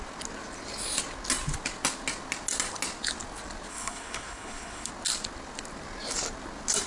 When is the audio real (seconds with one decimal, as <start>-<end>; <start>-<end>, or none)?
0.0-3.7; 4.9-6.9